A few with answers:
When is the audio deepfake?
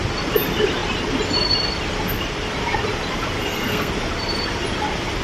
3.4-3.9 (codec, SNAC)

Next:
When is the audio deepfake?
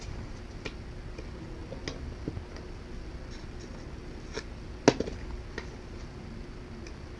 none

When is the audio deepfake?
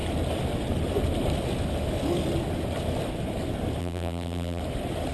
3.8-4.6 (vocoder, BigVGAN v2)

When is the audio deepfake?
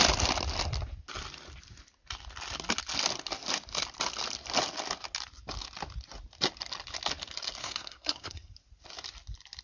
7.6-8.5 (codec, SNAC)